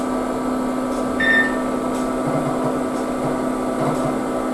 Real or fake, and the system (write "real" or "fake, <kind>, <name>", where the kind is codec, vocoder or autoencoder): real